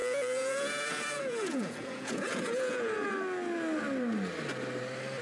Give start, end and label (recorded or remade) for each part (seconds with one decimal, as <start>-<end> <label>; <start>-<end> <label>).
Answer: 0.0-3.1 remade; 3.1-5.2 recorded